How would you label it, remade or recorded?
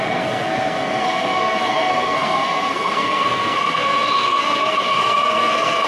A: remade